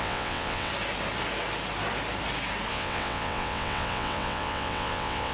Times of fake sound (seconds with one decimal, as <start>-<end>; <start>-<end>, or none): 0.0-0.7; 2.7-5.3